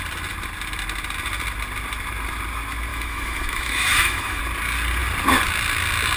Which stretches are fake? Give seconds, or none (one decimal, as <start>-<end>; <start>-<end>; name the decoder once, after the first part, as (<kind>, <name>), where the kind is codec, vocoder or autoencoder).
2.9-4.4 (autoencoder, DAC-VAE)